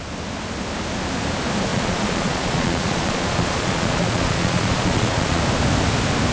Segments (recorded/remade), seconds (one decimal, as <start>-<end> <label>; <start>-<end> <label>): 0.0-1.7 recorded; 1.7-5.4 remade; 5.4-6.3 recorded